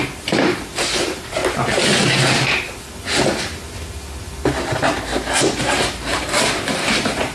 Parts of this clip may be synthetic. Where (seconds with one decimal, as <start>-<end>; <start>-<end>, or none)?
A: 0.0-1.4; 5.6-7.3